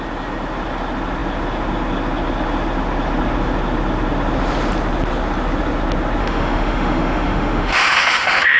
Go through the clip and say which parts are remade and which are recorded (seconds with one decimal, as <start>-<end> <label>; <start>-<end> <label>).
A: 0.0-6.2 recorded; 6.2-8.6 remade